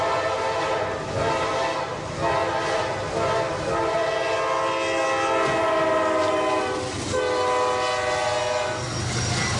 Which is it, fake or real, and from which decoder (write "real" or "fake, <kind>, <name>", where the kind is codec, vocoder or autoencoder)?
real